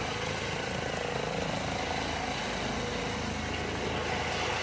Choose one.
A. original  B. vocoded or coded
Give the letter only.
A